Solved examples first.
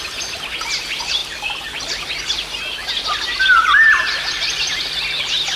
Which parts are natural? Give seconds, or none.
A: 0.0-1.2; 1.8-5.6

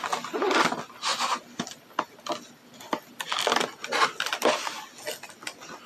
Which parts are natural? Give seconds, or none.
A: 0.0-1.1; 1.8-5.9

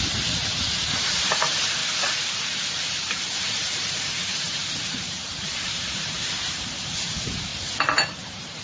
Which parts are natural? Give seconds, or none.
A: 1.8-2.7; 7.5-8.2

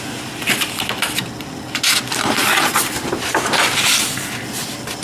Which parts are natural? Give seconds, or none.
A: 0.0-2.4; 3.8-5.0

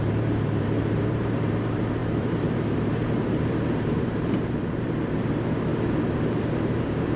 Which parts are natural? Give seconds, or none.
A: 5.7-6.4